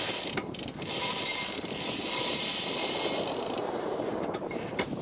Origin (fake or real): fake